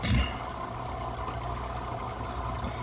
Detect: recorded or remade recorded